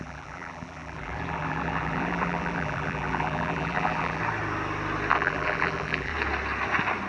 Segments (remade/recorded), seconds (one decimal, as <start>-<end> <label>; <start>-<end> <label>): 0.0-4.2 remade; 4.2-5.1 recorded; 5.1-6.1 remade; 6.1-7.1 recorded